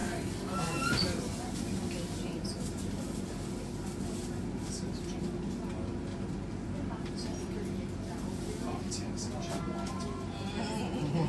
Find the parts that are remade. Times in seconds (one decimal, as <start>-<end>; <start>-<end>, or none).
none